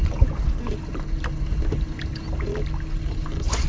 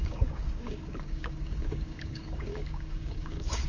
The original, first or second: first